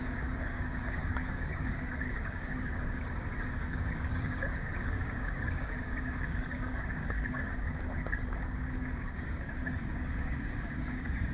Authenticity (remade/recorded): remade